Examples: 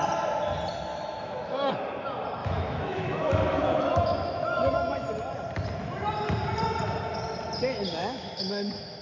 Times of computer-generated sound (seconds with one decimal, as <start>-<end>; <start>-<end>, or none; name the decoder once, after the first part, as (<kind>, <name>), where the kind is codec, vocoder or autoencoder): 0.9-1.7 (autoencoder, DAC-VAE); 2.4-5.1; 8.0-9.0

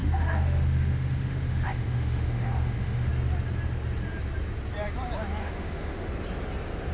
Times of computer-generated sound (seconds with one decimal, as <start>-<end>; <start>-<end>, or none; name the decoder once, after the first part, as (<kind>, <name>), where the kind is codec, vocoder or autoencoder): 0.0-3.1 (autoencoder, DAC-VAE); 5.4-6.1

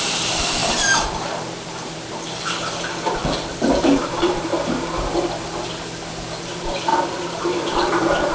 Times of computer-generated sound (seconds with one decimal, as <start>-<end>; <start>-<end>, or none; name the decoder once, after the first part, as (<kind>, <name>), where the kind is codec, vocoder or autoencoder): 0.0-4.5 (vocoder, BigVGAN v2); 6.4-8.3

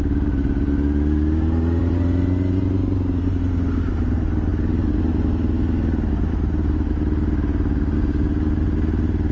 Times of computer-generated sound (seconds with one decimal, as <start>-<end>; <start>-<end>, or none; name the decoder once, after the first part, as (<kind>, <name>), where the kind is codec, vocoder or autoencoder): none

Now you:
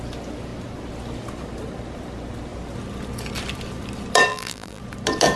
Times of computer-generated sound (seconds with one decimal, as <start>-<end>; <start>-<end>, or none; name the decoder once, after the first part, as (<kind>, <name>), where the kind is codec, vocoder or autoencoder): 4.3-4.8 (vocoder, BigVGAN v2)

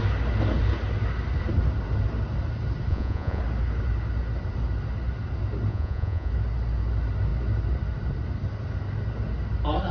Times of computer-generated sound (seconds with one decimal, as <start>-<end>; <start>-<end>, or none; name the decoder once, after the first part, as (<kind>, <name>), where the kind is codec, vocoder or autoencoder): 2.9-3.4 (vocoder, Vocos); 5.7-6.3